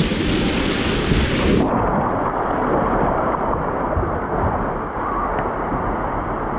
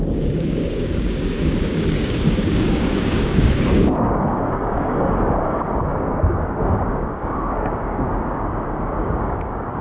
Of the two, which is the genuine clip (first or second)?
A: first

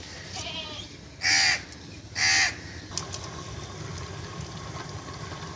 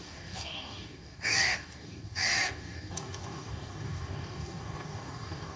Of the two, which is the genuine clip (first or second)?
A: first